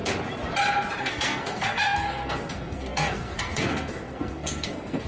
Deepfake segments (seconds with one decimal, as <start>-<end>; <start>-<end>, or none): 1.0-5.1